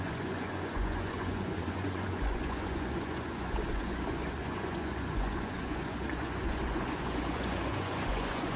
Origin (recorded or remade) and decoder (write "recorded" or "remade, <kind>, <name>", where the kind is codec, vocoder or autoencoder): remade, vocoder, Vocos